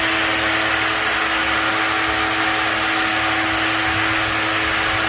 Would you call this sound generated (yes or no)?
no